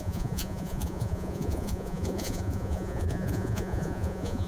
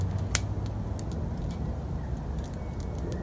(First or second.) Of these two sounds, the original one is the second